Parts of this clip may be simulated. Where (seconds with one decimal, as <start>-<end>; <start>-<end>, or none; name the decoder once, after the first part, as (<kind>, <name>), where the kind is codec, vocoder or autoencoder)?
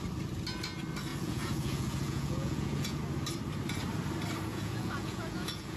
1.1-3.0 (vocoder, Vocos); 4.5-5.8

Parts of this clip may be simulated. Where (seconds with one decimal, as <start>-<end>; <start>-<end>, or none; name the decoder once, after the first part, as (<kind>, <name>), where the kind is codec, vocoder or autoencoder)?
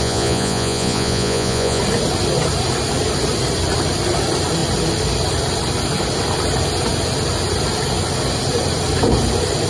0.0-1.8 (vocoder, Vocos)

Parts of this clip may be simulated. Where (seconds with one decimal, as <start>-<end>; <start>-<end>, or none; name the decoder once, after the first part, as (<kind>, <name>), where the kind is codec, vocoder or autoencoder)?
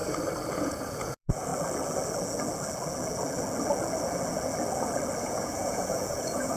0.6-1.5 (vocoder, Vocos); 5.2-6.6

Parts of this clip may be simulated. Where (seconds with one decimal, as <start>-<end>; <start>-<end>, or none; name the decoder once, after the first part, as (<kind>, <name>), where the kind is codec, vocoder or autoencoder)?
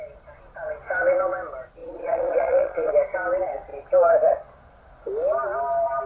1.8-2.9 (vocoder, Vocos)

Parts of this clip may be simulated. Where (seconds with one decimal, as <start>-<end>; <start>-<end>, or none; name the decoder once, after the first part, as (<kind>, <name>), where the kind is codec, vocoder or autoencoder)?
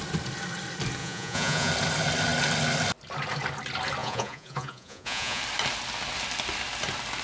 1.0-1.7 (vocoder, Vocos); 4.0-5.4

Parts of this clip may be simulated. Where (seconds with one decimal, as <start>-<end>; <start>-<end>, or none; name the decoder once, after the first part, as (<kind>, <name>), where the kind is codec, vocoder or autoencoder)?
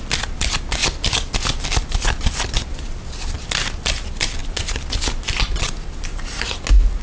none